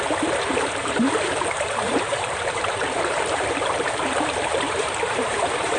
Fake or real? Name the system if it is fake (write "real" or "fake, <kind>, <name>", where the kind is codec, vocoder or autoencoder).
fake, vocoder, BigVGAN v2